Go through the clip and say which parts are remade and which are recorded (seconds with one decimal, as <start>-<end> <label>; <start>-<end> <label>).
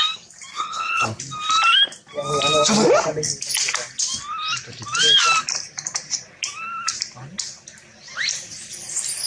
0.0-0.5 recorded; 0.5-1.2 remade; 1.2-9.3 recorded